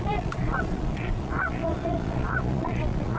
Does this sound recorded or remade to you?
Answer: remade